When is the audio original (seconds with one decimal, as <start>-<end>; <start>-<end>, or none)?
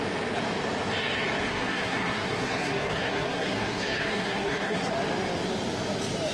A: 0.0-1.4; 4.9-6.3